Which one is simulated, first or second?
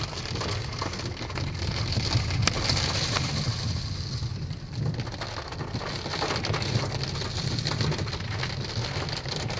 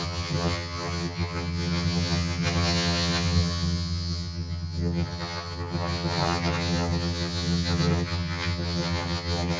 second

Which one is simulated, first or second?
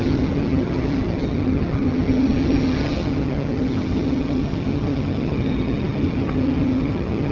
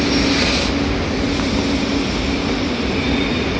first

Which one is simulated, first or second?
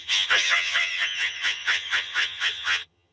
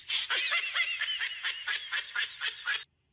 first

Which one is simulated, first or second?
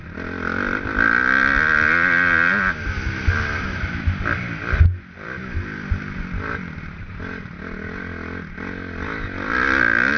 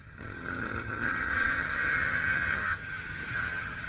second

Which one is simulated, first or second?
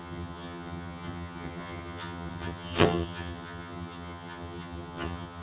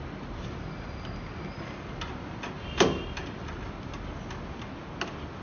first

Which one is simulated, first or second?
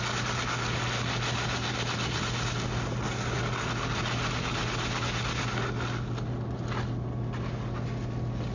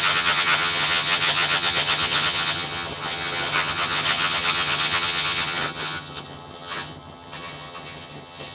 second